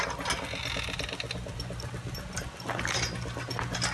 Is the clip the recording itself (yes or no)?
yes